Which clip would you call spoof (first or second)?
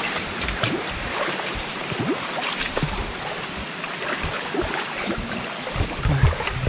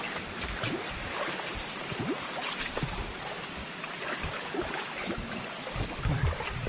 second